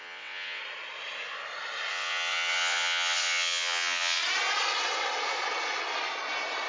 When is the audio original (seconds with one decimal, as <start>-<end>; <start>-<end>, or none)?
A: 0.6-1.9; 4.2-6.7